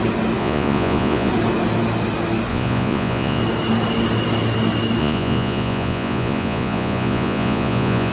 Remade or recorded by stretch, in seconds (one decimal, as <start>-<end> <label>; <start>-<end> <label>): 0.0-0.4 recorded; 0.4-1.3 remade; 1.3-2.5 recorded; 2.5-3.4 remade; 3.4-5.0 recorded; 5.0-8.1 remade